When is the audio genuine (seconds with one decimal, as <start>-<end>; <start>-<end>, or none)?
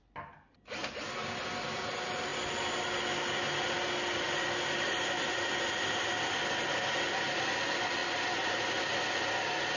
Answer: 0.0-9.8